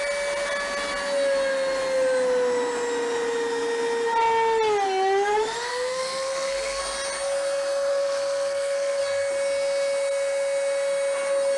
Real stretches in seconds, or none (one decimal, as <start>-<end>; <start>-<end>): 0.0-5.7; 6.8-7.9; 9.0-11.6